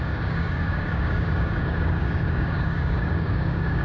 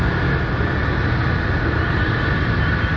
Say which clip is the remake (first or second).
first